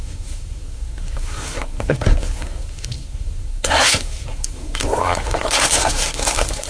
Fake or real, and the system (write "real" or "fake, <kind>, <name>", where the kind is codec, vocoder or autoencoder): fake, codec, SNAC